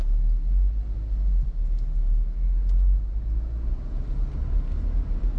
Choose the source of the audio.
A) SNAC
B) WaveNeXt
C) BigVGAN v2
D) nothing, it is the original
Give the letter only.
D